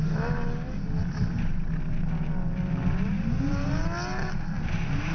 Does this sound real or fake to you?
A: real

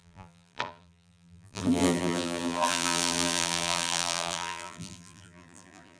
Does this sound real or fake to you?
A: fake